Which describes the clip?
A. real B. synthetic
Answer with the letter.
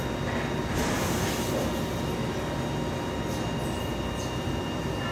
A